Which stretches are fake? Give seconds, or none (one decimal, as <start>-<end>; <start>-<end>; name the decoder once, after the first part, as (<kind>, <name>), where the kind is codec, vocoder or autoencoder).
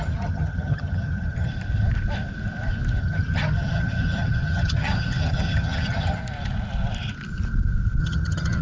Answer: 0.0-1.5 (vocoder, HiFi-GAN); 3.0-6.2; 8.0-8.6